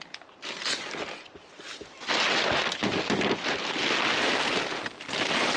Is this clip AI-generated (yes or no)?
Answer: no